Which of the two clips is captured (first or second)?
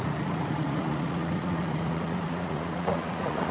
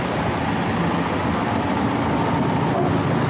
second